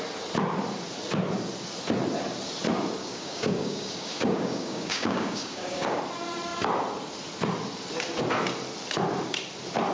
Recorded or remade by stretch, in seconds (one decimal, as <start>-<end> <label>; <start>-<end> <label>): 0.0-3.0 recorded; 3.0-6.0 remade; 6.0-9.9 recorded